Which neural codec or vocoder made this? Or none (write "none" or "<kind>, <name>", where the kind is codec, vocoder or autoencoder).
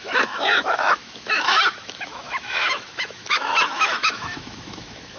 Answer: autoencoder, DAC-VAE